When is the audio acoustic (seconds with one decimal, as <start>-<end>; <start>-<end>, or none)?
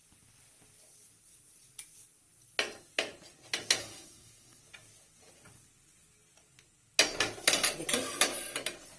0.0-3.8; 4.6-9.0